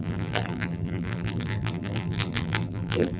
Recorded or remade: remade